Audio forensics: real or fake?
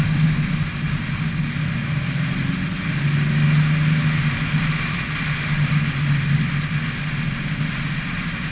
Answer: real